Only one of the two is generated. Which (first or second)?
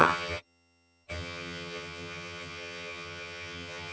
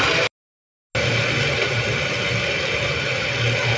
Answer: first